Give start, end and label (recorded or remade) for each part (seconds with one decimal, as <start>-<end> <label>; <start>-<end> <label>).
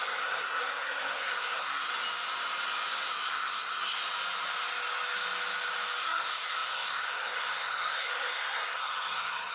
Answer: 0.0-1.9 remade; 1.9-3.1 recorded; 3.1-4.0 remade; 4.0-6.0 recorded; 6.0-9.5 remade